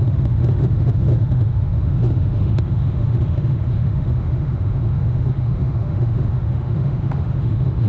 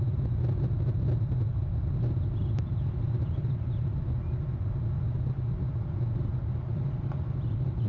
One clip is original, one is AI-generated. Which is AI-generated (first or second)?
first